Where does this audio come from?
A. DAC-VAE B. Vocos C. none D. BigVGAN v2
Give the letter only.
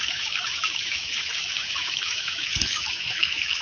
A